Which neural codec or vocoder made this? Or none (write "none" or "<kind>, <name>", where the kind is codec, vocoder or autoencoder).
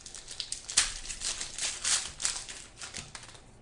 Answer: none